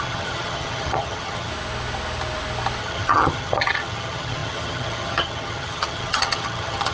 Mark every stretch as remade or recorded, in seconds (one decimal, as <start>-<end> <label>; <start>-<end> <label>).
0.0-1.5 remade; 1.5-2.8 recorded; 2.8-6.9 remade